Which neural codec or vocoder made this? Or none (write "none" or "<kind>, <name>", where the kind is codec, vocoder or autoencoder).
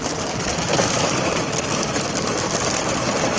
none